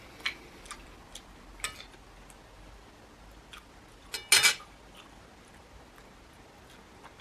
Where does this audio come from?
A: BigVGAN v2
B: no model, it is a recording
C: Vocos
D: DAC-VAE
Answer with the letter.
B